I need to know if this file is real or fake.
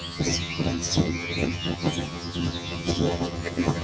fake